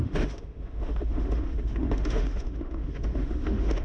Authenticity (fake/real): fake